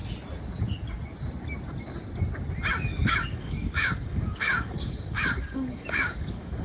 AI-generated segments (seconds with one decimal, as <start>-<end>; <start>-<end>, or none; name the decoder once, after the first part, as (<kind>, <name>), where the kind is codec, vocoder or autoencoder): 2.7-6.6 (codec, DAC)